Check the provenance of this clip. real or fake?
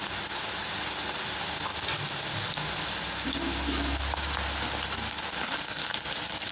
real